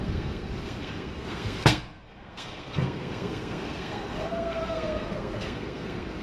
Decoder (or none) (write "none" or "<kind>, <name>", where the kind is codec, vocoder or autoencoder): codec, SNAC